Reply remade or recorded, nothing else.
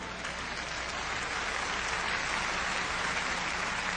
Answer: recorded